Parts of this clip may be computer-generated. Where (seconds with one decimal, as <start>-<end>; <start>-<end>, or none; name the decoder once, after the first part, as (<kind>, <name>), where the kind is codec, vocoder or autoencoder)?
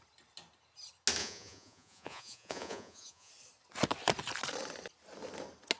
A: 1.2-3.3 (vocoder, Vocos)